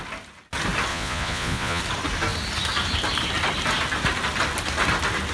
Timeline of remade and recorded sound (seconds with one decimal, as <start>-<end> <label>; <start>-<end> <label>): 0.0-0.9 recorded; 0.9-1.8 remade; 1.8-5.3 recorded